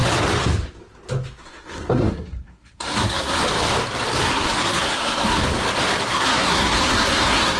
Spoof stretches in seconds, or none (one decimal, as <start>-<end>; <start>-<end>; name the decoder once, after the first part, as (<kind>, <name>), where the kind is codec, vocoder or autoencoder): 1.4-3.4 (codec, SNAC); 4.3-5.4; 6.1-7.6

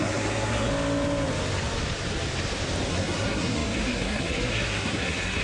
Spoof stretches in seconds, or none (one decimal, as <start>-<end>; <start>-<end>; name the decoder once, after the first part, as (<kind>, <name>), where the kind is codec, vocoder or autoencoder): 0.0-0.7 (codec, SNAC); 2.9-5.4